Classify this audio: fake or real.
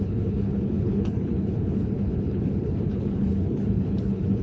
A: fake